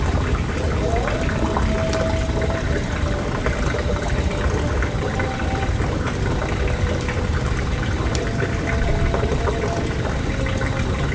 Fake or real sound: real